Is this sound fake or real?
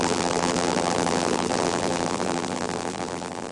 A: fake